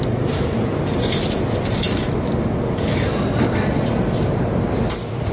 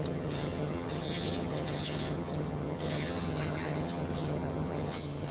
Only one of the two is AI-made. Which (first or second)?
second